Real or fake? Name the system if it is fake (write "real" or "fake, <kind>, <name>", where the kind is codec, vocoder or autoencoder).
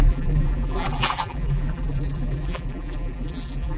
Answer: fake, vocoder, BigVGAN v2